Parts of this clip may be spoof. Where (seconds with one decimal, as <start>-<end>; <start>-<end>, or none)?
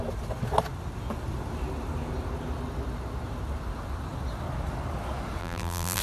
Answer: 5.4-6.0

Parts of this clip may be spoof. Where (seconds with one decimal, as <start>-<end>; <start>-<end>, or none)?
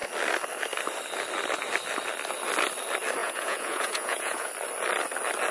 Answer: 3.2-4.5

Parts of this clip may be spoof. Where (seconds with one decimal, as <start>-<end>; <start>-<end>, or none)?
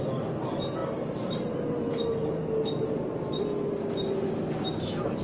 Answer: none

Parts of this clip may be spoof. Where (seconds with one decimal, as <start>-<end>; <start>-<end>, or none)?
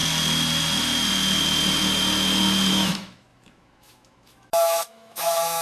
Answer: 2.7-5.6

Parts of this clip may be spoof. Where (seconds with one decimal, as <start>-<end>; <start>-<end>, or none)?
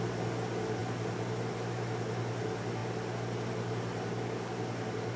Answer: none